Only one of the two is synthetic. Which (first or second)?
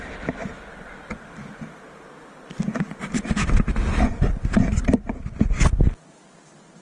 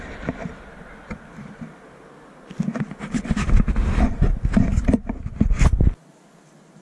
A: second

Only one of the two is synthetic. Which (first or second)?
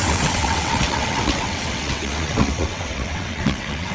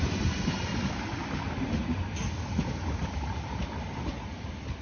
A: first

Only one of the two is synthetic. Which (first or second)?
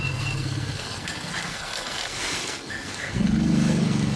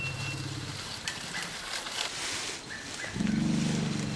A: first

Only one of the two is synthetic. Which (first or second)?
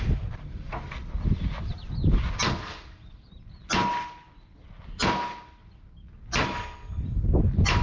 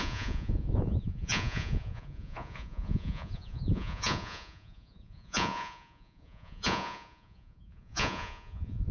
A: second